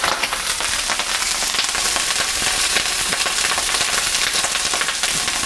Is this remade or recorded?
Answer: remade